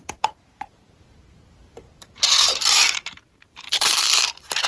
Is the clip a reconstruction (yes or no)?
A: yes